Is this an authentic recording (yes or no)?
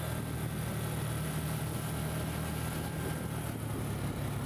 yes